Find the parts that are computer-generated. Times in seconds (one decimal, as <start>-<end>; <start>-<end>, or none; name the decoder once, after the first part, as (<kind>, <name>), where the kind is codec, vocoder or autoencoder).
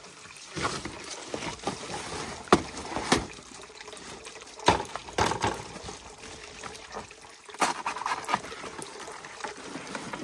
2.8-4.5 (vocoder, BigVGAN v2)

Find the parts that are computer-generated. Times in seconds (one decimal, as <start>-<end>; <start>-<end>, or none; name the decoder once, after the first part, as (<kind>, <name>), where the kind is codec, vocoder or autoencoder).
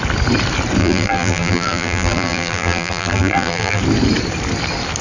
0.8-3.8 (vocoder, BigVGAN v2)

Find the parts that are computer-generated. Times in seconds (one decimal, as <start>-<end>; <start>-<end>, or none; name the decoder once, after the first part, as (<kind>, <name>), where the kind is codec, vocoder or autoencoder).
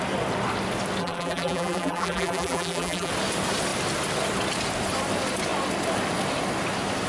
1.0-3.1 (vocoder, BigVGAN v2)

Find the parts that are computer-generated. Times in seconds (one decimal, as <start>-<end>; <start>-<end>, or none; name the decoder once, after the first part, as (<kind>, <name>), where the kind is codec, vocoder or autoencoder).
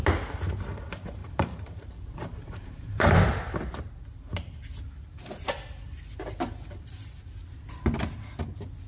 1.2-3.8 (vocoder, BigVGAN v2)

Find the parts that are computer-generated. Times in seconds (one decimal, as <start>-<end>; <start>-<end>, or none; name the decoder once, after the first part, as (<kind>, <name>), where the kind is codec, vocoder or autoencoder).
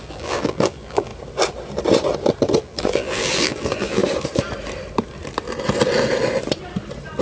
0.0-1.1 (vocoder, BigVGAN v2); 2.6-4.0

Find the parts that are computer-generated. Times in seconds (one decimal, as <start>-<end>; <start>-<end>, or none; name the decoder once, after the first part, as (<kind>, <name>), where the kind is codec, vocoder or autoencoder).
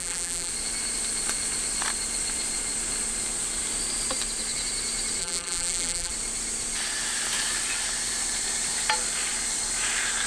0.0-0.5 (vocoder, BigVGAN v2); 5.2-6.1